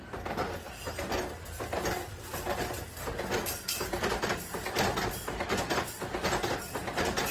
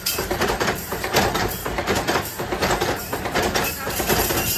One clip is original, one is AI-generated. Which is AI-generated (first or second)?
second